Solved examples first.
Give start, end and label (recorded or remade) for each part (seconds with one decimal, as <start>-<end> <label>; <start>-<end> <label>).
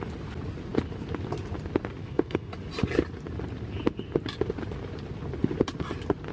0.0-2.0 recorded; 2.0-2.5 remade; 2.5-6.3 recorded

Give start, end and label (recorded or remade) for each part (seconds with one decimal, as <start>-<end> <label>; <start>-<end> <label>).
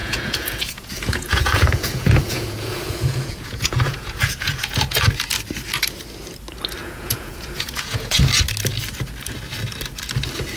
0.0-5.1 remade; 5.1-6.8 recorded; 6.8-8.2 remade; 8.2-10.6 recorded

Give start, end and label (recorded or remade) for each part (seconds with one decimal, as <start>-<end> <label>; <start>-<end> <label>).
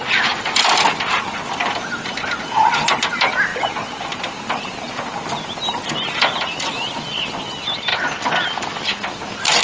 0.0-9.6 recorded